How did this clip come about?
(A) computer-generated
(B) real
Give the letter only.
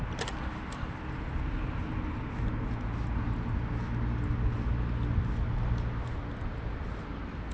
B